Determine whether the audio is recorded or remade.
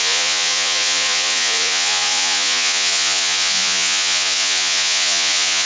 remade